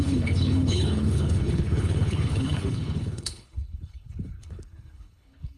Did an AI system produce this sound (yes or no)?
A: yes